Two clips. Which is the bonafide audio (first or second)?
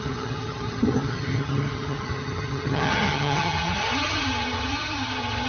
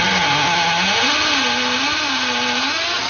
second